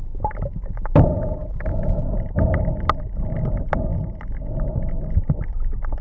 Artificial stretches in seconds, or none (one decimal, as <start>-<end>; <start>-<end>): 1.4-2.0